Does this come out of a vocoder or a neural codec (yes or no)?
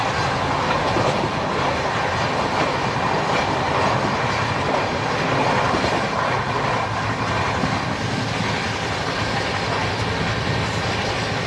no